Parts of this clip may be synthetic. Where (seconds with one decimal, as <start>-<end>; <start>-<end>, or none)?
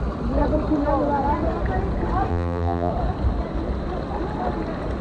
2.3-2.9